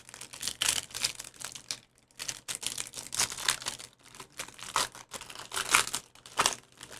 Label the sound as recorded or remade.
recorded